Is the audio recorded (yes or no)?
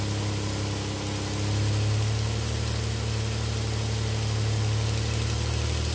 yes